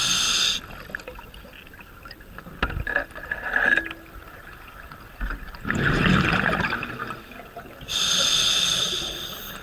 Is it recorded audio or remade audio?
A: recorded